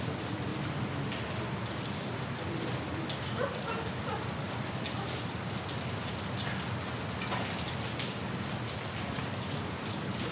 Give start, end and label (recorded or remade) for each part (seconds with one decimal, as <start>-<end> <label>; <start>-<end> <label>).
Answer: 0.0-10.3 recorded